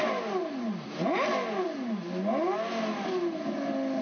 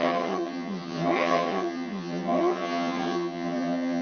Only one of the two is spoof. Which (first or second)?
second